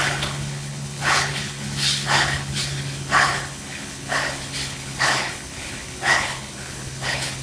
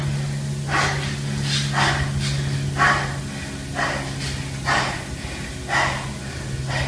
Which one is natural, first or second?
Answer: second